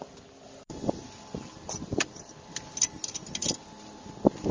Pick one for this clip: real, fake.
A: real